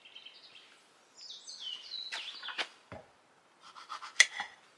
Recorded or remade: recorded